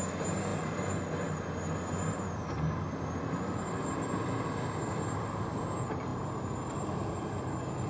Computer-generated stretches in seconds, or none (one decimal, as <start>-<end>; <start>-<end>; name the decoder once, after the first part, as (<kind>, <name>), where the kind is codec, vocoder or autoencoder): none